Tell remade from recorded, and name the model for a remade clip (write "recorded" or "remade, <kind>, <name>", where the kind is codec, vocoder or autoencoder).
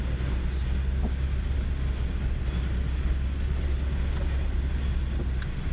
recorded